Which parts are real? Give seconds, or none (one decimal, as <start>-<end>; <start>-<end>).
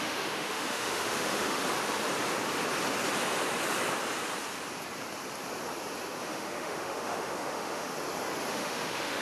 1.6-6.2; 7.9-8.5